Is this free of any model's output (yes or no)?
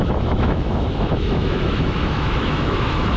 no